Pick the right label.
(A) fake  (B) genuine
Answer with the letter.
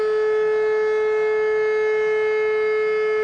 B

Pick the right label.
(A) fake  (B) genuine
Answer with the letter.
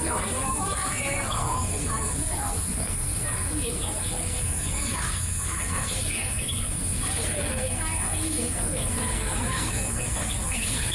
A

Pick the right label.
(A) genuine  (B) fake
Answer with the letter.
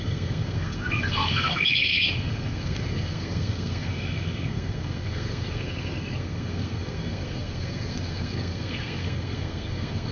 B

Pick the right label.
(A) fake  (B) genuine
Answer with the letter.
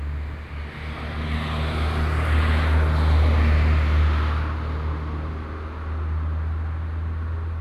B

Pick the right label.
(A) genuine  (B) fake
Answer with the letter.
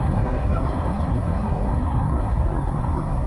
B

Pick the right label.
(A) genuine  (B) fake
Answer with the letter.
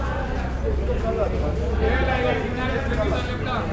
A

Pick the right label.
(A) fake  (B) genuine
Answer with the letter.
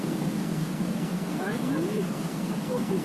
A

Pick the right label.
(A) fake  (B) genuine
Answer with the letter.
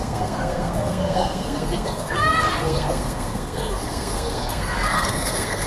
A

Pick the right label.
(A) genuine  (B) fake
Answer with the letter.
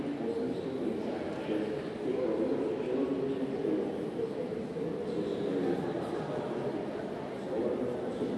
A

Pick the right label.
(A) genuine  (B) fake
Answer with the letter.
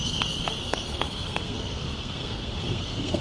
B